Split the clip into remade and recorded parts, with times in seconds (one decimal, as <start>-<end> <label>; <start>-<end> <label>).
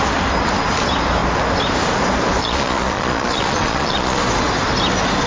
0.0-2.4 recorded; 2.4-4.2 remade; 4.2-5.3 recorded